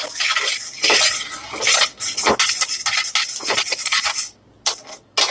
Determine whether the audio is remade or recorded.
recorded